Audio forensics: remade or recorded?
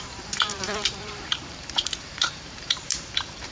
remade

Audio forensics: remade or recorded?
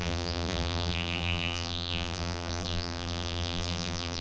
remade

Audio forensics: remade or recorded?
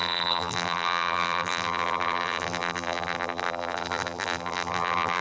remade